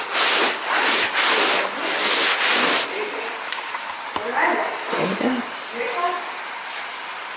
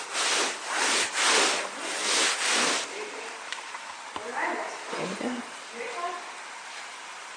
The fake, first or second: second